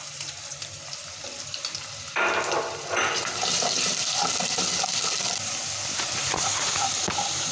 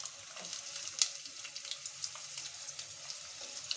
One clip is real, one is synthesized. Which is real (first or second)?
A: second